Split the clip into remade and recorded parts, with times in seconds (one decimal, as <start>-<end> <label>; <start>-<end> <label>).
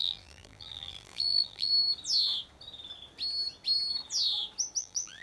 0.0-1.7 remade; 1.7-4.8 recorded; 4.8-5.2 remade